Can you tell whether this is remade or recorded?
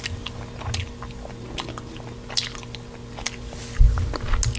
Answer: recorded